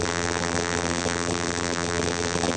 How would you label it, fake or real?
fake